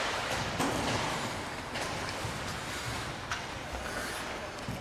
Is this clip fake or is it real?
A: real